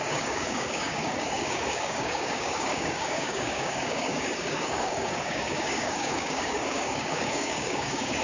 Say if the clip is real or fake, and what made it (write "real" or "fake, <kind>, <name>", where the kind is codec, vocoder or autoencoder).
fake, codec, DAC